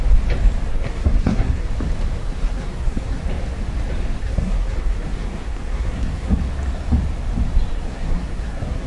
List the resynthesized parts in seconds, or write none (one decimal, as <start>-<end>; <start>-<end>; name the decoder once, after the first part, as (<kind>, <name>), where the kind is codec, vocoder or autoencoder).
0.7-1.7 (codec, SNAC); 2.2-3.2; 4.2-6.4; 7.7-8.9